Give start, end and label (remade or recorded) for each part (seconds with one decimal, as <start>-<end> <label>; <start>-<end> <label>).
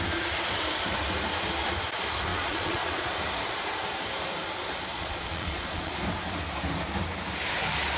0.0-2.3 recorded; 2.3-3.1 remade; 3.1-4.9 recorded; 4.9-5.9 remade; 5.9-8.0 recorded